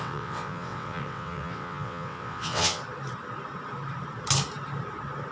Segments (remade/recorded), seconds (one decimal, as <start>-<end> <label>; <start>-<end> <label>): 0.0-2.8 remade; 2.8-5.3 recorded